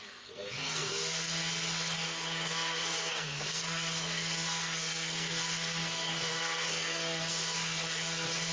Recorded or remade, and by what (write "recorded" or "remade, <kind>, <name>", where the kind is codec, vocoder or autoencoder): remade, codec, SNAC